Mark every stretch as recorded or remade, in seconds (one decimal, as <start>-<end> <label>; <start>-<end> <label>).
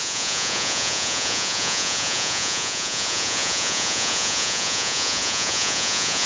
0.0-6.3 remade